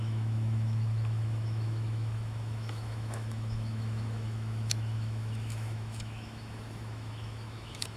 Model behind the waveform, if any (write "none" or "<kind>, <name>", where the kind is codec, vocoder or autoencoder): autoencoder, DAC-VAE